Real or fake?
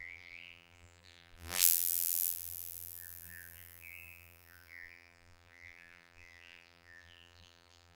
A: fake